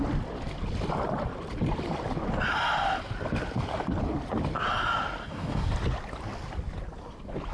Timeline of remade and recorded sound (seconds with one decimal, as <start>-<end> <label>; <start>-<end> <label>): 0.0-5.2 recorded; 5.2-5.7 remade; 5.7-7.5 recorded